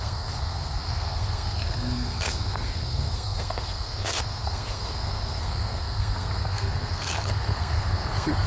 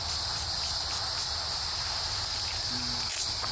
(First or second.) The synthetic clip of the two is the first